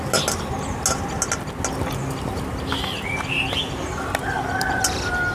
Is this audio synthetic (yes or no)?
no